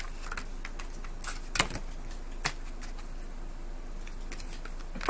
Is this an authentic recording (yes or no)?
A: yes